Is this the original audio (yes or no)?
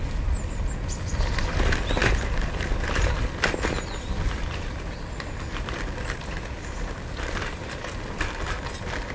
yes